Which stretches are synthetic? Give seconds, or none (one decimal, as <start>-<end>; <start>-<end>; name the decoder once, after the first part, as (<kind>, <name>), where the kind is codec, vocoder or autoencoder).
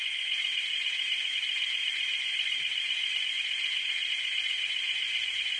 0.7-4.1 (vocoder, BigVGAN v2)